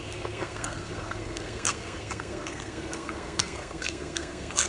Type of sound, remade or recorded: remade